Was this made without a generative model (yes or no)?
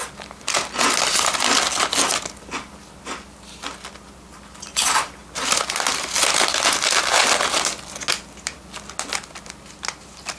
yes